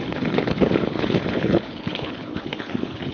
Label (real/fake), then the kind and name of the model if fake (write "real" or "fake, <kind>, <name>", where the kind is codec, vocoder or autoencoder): fake, codec, HILCodec